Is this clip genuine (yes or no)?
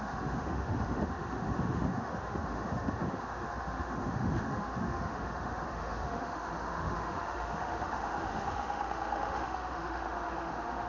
no